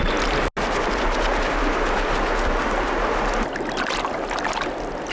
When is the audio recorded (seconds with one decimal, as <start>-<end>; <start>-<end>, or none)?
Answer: 0.0-5.1